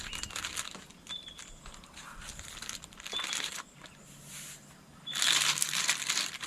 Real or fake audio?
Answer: real